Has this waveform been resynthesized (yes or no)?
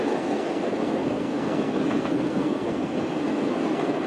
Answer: yes